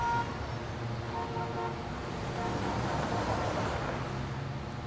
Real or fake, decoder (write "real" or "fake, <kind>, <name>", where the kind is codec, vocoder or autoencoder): real